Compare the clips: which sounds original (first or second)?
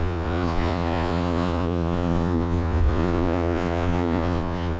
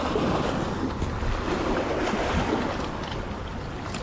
second